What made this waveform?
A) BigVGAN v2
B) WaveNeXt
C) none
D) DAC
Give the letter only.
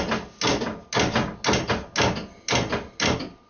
C